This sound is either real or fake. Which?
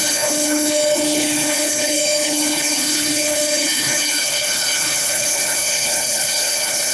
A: fake